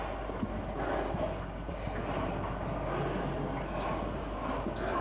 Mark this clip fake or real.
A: real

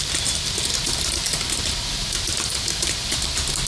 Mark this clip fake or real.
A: real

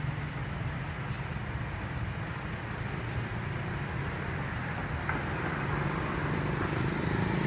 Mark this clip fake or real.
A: real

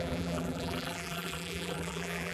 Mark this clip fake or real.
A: fake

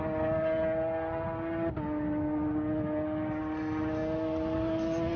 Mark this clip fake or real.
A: real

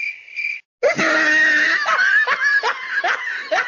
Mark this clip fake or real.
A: real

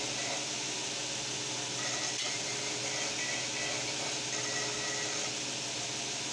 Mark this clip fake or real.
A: real